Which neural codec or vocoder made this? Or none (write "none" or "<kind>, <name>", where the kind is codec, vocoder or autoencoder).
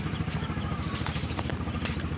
vocoder, BigVGAN v2